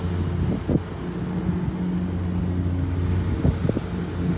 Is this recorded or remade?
recorded